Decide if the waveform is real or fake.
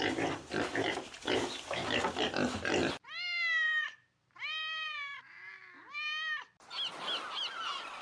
real